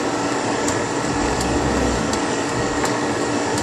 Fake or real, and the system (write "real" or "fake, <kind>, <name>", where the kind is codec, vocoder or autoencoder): fake, codec, DAC